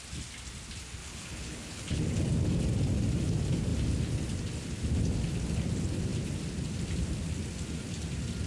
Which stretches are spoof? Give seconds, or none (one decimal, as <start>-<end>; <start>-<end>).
1.0-2.0